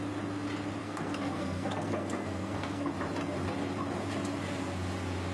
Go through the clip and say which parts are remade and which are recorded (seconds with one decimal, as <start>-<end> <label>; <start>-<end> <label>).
0.0-0.8 recorded; 0.8-2.9 remade; 2.9-5.3 recorded